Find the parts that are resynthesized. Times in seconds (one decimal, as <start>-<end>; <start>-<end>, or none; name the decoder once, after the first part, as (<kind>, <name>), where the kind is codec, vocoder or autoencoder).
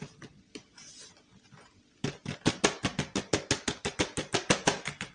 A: none